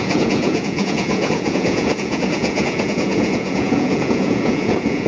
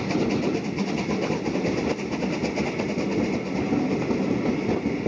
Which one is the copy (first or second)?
first